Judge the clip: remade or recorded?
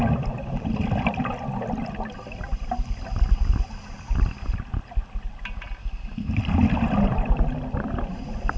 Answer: recorded